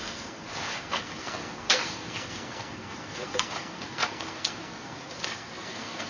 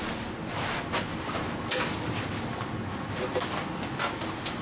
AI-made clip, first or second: first